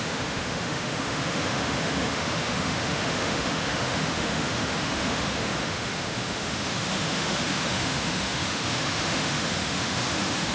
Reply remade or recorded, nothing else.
remade